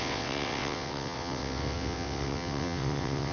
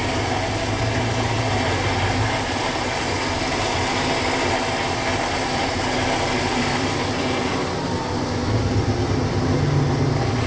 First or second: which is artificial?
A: first